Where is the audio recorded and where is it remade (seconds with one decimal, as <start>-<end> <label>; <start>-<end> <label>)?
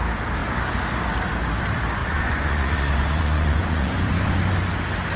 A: 0.0-2.0 recorded; 2.0-4.4 remade; 4.4-5.2 recorded